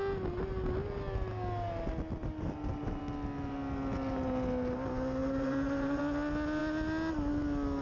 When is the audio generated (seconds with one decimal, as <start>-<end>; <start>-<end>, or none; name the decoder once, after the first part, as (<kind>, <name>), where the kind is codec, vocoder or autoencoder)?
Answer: 2.2-3.0 (vocoder, BigVGAN v2); 5.2-6.0